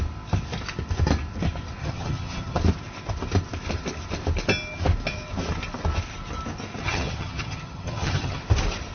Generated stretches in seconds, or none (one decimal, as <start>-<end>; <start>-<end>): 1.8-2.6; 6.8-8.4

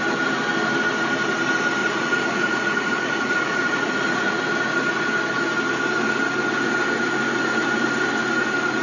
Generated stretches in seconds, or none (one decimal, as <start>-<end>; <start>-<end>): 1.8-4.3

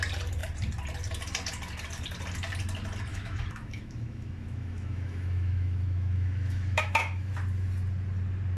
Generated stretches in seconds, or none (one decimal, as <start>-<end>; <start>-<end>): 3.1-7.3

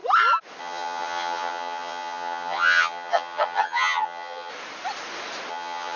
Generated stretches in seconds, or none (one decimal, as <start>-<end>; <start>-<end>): 0.6-4.5; 5.5-6.0

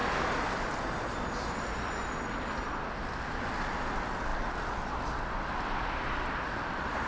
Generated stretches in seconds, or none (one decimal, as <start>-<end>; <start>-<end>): none

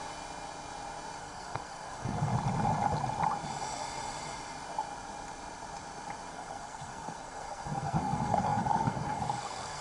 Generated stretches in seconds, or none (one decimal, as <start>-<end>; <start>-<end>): 1.2-2.3; 6.3-9.8